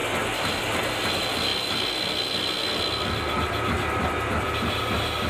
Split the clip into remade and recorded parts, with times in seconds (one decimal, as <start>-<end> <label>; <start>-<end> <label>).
0.0-5.3 recorded